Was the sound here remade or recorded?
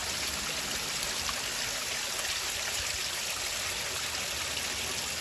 recorded